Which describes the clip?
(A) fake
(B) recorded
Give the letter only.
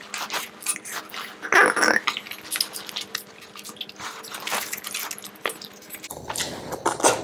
B